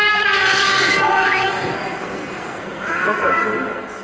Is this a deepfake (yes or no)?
yes